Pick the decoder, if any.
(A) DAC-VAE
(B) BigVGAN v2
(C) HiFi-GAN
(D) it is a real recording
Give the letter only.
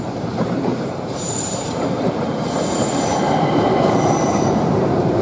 B